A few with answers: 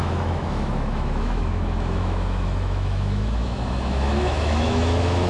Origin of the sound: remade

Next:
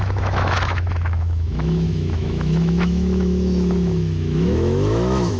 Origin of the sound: remade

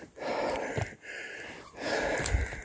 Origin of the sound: recorded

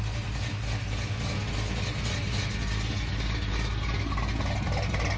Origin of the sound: recorded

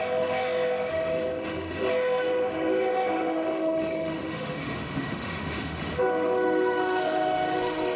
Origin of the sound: remade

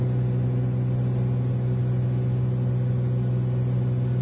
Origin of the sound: recorded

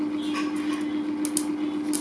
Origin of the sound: recorded